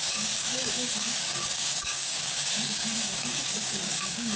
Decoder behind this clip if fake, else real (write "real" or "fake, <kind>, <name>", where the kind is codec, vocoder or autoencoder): fake, codec, DAC